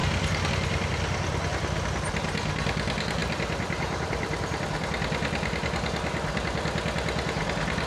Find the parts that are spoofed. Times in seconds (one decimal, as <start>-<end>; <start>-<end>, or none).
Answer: 3.2-4.6